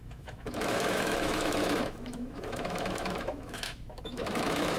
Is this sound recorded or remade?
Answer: remade